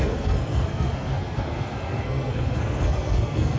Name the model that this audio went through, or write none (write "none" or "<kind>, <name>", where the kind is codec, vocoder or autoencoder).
codec, SNAC